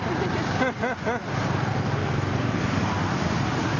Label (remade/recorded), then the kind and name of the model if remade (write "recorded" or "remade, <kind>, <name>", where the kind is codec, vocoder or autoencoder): recorded